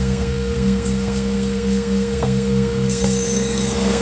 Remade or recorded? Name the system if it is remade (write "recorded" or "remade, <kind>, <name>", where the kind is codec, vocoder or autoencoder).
remade, codec, SNAC